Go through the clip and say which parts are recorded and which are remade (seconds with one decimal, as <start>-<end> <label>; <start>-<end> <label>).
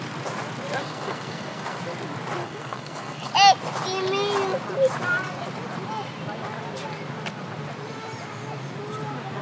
0.0-0.8 recorded; 0.8-1.8 remade; 1.8-2.4 recorded; 2.4-3.3 remade; 3.3-9.4 recorded